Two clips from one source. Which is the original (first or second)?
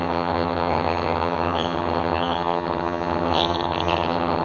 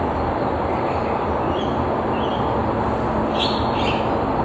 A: second